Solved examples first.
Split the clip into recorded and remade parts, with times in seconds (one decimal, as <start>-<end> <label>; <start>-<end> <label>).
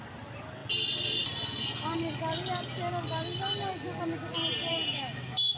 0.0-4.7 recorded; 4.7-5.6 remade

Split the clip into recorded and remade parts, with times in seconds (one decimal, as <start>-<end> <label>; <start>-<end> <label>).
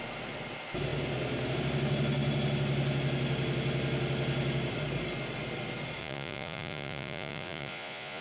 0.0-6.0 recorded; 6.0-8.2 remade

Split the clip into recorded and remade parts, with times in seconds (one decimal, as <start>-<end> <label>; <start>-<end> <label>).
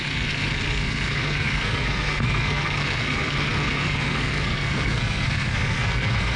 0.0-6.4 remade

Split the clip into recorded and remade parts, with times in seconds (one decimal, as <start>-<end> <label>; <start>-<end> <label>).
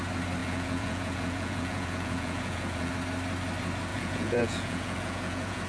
0.0-0.4 recorded; 0.4-2.9 remade; 2.9-3.9 recorded; 3.9-5.7 remade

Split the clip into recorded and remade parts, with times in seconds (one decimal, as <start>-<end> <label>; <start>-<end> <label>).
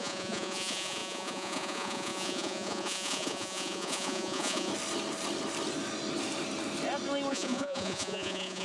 0.0-4.7 remade; 4.7-7.3 recorded; 7.3-8.6 remade